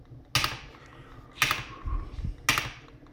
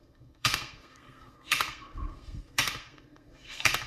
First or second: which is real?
first